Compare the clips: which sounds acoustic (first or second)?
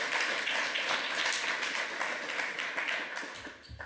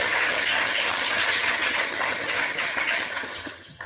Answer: first